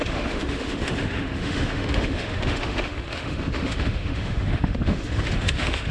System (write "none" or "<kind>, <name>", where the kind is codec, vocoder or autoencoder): autoencoder, DAC-VAE